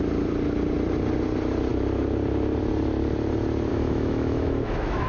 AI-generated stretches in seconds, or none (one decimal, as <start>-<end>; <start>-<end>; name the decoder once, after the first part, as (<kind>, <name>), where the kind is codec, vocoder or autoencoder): 3.7-5.1 (autoencoder, DAC-VAE)